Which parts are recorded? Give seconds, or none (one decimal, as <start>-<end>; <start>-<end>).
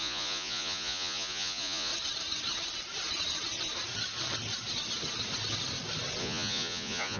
1.9-6.2